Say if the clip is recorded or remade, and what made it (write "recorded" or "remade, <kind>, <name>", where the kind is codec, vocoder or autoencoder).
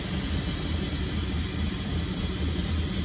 recorded